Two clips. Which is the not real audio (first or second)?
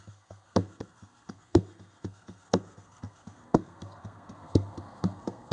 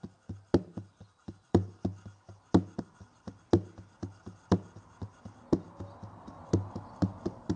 first